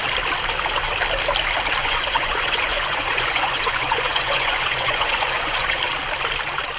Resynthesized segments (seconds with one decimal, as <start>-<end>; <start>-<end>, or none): 1.8-5.8